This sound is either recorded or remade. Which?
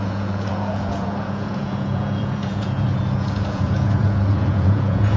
remade